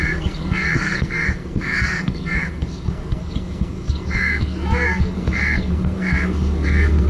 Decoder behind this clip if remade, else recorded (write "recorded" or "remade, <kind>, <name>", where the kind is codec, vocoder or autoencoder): remade, codec, SNAC